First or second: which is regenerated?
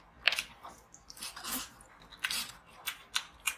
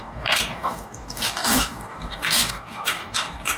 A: second